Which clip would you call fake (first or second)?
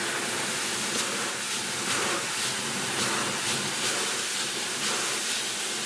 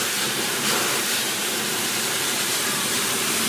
second